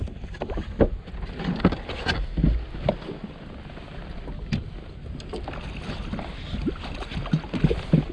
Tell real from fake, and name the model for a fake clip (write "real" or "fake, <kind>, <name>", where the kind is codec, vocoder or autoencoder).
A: real